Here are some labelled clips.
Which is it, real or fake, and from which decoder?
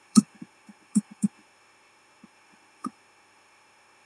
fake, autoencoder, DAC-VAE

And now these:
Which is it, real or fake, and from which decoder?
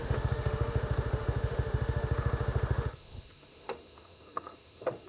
fake, autoencoder, DAC-VAE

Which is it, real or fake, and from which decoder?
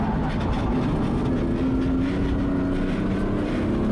real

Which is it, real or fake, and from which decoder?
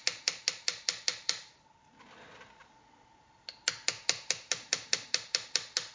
real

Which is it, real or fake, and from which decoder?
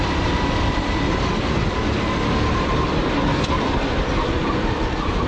real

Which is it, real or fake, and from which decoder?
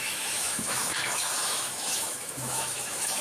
fake, autoencoder, DAC-VAE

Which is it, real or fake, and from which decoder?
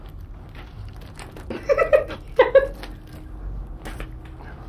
real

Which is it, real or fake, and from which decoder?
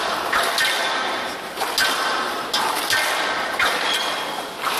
real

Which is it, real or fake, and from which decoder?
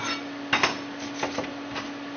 real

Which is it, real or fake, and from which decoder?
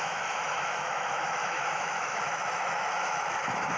fake, autoencoder, DAC-VAE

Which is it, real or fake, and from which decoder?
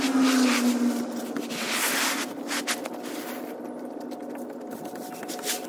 real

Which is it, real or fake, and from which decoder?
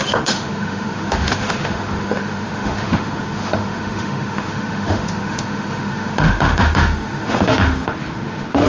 fake, autoencoder, DAC-VAE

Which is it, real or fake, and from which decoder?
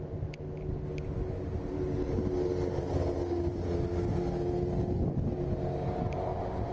real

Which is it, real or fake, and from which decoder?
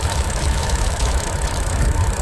fake, autoencoder, DAC-VAE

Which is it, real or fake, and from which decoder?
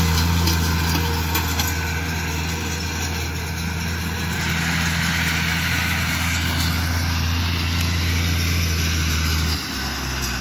real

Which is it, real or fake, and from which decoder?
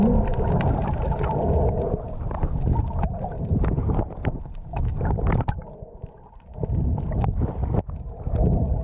real